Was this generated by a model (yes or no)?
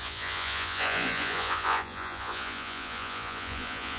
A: yes